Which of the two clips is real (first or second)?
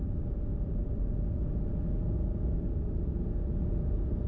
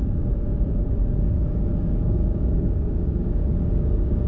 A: first